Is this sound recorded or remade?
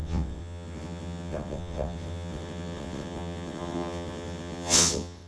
remade